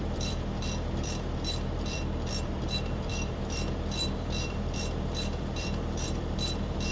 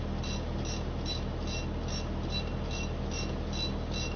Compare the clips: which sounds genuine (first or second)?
second